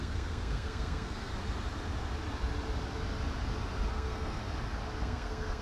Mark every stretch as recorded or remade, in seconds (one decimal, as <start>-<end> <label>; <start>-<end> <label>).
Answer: 0.0-1.3 remade; 1.3-3.9 recorded; 3.9-4.4 remade; 4.4-5.0 recorded; 5.0-5.6 remade